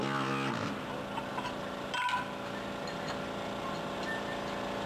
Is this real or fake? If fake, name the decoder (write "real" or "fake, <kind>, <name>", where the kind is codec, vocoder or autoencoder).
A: real